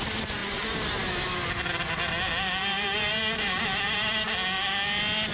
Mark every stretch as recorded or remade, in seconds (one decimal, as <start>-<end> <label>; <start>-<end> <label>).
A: 0.0-5.3 recorded